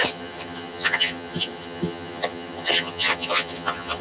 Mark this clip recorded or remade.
remade